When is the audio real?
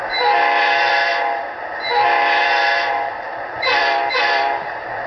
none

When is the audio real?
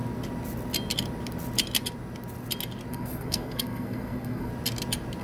0.0-2.9; 4.5-5.2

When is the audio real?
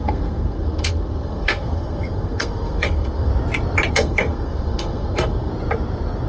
3.3-3.9; 5.5-6.3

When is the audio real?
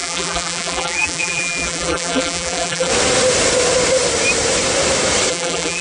2.9-5.3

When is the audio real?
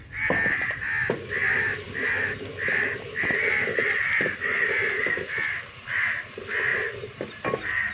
0.0-1.4; 6.1-6.7; 7.3-7.9